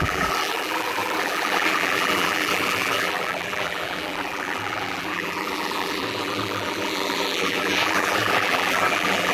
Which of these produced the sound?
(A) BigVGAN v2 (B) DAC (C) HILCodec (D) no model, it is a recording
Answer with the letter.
A